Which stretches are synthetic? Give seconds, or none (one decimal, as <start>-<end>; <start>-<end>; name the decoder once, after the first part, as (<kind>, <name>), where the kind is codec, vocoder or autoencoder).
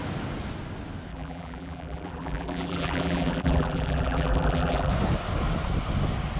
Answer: 1.1-4.9 (vocoder, BigVGAN v2)